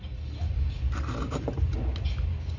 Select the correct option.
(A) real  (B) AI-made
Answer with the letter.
A